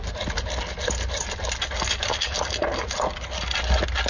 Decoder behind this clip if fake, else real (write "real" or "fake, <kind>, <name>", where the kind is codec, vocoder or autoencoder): real